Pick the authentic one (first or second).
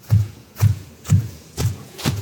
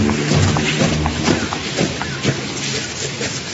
second